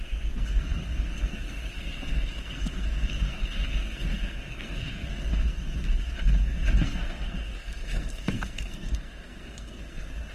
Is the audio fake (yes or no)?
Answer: yes